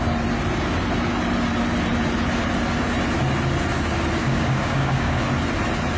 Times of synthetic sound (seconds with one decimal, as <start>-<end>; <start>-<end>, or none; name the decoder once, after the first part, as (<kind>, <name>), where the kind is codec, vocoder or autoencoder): 4.2-5.2 (codec, DAC)